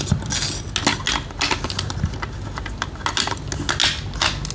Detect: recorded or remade recorded